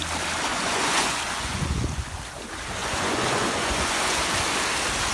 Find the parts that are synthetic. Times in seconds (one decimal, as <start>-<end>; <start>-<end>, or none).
0.5-2.2; 2.8-4.2